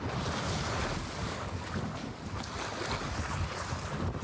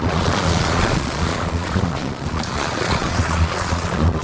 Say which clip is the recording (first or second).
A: first